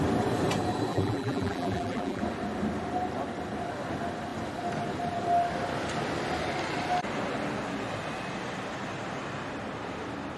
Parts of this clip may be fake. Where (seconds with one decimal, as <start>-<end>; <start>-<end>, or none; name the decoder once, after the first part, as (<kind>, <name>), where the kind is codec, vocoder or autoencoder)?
0.9-2.2 (vocoder, BigVGAN v2)